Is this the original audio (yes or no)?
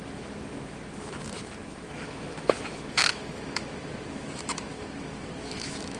no